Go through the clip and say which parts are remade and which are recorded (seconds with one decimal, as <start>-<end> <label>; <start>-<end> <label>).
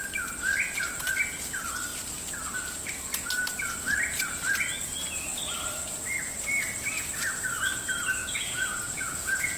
0.0-8.2 recorded; 8.2-9.6 remade